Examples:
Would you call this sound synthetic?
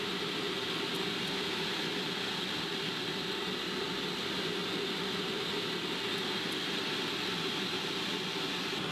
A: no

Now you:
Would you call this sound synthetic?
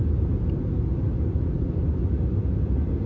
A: no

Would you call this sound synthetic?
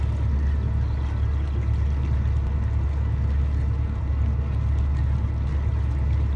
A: no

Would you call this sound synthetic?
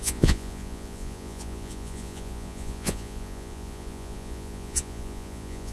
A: yes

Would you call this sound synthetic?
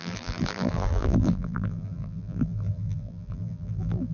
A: yes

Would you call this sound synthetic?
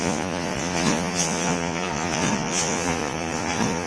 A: yes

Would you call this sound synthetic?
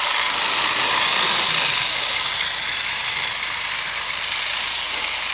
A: no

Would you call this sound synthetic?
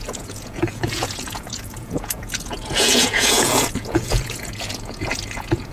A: yes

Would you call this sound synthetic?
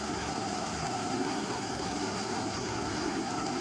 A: yes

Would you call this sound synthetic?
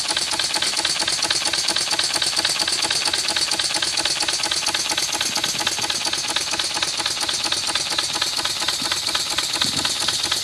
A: no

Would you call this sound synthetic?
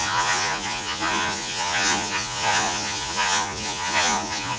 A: yes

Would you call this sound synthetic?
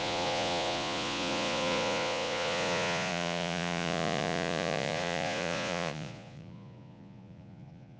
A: yes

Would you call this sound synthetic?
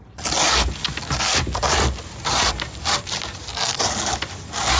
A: no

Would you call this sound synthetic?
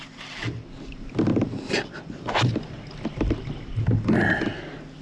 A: no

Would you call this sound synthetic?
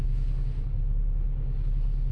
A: no